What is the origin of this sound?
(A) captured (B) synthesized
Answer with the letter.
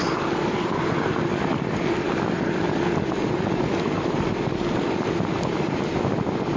B